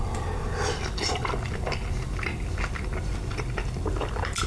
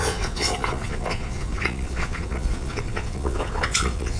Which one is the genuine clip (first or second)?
first